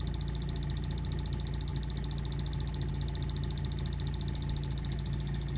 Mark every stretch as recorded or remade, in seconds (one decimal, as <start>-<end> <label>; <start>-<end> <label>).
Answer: 0.0-5.6 recorded